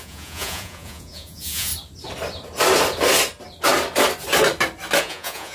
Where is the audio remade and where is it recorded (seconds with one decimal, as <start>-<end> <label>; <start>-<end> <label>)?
0.0-1.7 remade; 1.7-5.0 recorded; 5.0-5.5 remade